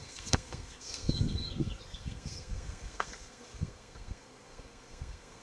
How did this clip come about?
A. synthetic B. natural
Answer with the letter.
A